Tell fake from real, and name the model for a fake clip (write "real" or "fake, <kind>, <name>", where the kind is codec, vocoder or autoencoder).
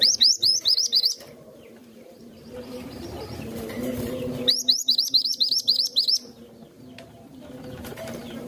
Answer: fake, vocoder, BigVGAN v2